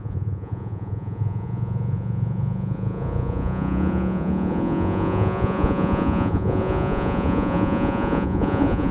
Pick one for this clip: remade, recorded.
remade